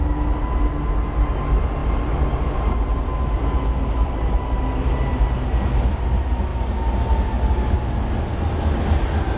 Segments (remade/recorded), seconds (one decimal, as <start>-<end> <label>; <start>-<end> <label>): 0.0-9.4 recorded